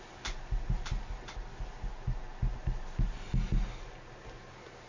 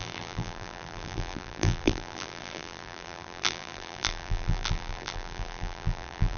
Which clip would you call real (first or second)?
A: first